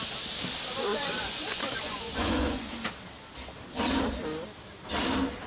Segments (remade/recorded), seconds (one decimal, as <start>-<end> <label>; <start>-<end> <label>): 0.0-0.9 recorded; 0.9-2.7 remade; 2.7-5.5 recorded